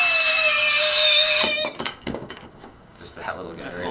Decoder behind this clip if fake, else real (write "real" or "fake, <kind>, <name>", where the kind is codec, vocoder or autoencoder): fake, codec, DAC